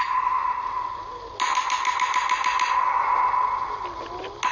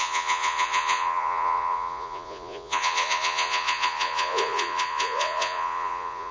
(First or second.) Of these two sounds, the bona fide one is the first